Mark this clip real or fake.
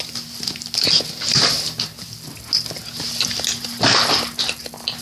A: real